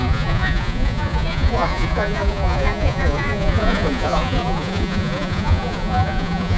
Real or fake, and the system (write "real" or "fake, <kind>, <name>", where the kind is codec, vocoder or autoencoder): fake, vocoder, Vocos